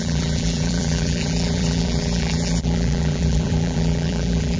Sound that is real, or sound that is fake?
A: fake